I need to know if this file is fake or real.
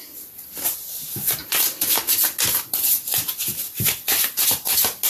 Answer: real